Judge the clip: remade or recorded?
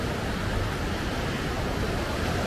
recorded